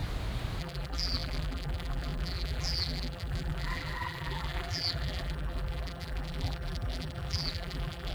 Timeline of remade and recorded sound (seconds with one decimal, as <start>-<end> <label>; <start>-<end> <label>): 0.0-0.6 recorded; 0.6-8.1 remade